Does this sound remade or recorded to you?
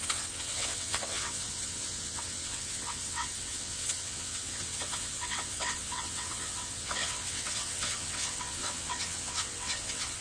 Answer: remade